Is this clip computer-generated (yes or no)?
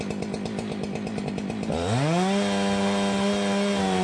no